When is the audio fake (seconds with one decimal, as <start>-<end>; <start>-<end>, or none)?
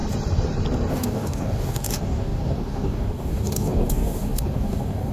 0.9-5.1